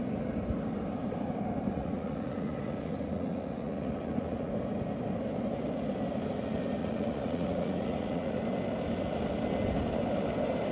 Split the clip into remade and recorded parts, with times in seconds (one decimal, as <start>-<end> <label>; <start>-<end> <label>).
0.0-1.7 recorded; 1.7-4.5 remade; 4.5-6.8 recorded; 6.8-8.4 remade; 8.4-10.7 recorded